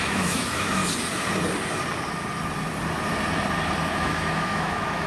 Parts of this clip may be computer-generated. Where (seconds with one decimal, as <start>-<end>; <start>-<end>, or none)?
0.0-0.8; 3.9-5.1